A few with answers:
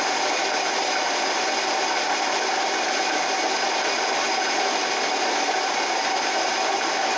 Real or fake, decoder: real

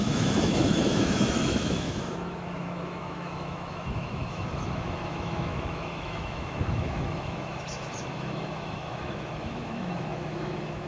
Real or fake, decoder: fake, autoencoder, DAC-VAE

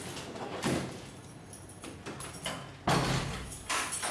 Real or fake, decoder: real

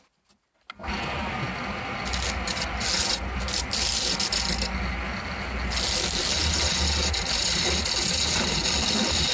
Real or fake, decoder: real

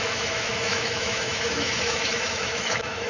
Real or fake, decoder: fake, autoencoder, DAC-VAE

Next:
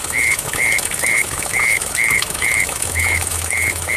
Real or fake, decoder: fake, autoencoder, DAC-VAE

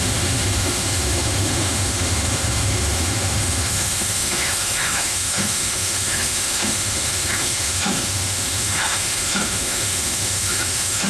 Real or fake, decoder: fake, autoencoder, DAC-VAE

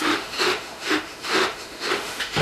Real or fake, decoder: fake, autoencoder, DAC-VAE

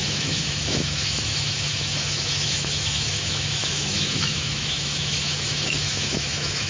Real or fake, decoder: fake, autoencoder, DAC-VAE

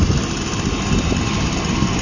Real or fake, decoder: real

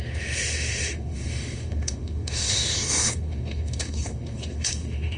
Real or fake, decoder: fake, autoencoder, DAC-VAE